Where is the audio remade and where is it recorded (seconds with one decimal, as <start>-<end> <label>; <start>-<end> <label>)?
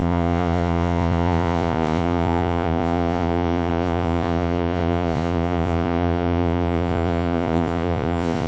0.0-8.5 remade